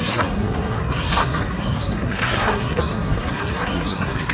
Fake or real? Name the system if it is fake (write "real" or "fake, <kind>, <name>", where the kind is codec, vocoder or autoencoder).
fake, codec, SNAC